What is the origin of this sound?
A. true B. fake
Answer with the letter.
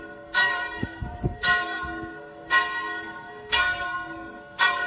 B